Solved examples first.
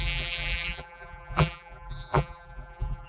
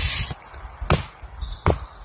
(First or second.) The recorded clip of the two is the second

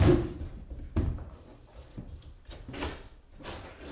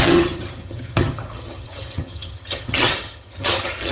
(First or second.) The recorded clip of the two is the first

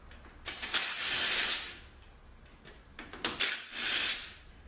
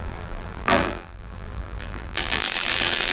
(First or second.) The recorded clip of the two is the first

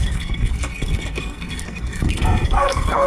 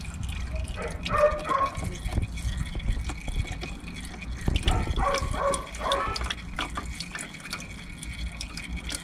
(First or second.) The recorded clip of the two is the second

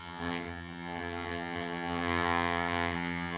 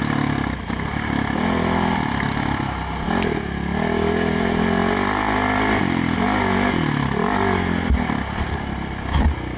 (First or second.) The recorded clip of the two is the second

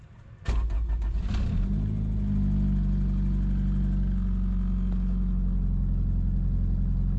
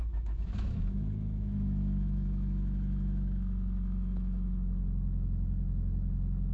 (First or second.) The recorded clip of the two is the first